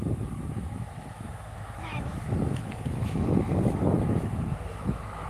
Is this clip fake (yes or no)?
yes